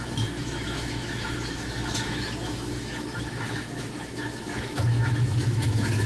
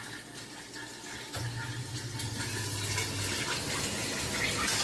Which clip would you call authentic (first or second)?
second